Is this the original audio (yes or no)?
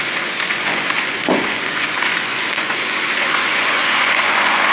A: no